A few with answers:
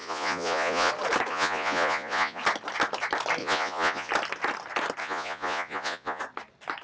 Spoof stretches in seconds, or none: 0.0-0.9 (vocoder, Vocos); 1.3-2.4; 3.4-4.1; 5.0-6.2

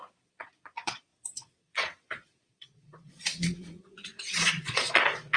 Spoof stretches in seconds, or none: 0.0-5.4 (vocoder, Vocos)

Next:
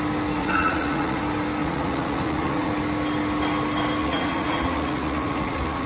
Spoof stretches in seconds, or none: 0.4-1.2 (vocoder, Vocos); 1.6-2.7; 4.0-5.9